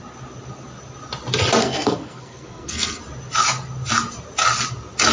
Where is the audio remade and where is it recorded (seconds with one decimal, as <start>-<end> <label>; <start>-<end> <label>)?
0.0-1.6 recorded; 1.6-3.0 remade; 3.0-5.1 recorded